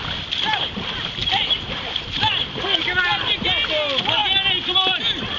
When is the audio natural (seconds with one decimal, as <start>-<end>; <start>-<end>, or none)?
0.0-1.2; 2.3-5.4

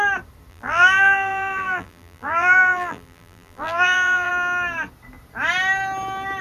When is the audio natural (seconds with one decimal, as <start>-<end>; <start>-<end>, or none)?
0.0-0.5; 4.3-6.4

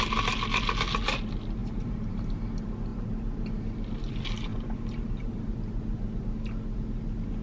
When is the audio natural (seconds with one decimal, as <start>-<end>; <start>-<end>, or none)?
0.0-1.6; 2.4-4.5; 5.3-7.4